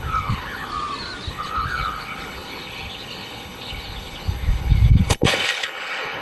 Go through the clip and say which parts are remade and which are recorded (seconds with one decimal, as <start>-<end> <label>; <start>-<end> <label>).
0.0-0.7 remade; 0.7-1.3 recorded; 1.3-6.2 remade